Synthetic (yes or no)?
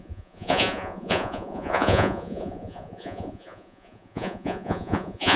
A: yes